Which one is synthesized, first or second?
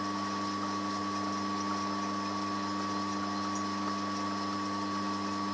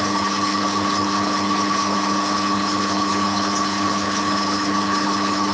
second